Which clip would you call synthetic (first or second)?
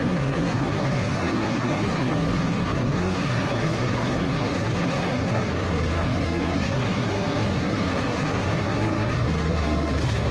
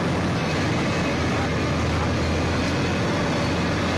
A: first